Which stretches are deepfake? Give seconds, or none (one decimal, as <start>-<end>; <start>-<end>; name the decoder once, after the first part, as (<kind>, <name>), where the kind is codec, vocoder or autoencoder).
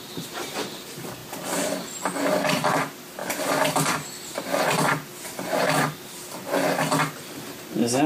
none